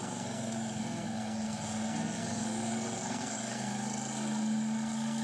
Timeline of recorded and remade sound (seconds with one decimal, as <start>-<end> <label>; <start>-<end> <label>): 0.0-5.2 remade